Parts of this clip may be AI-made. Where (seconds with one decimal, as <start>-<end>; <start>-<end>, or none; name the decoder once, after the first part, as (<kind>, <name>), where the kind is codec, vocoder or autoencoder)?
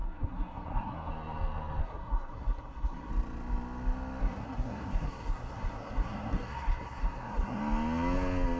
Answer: 0.0-1.1 (codec, SNAC); 1.8-3.1; 4.2-7.6